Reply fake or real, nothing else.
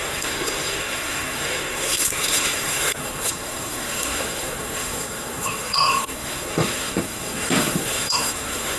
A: fake